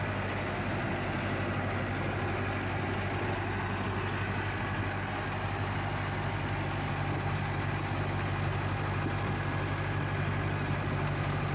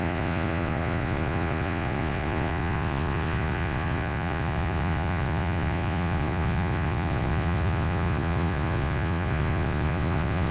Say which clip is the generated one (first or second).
second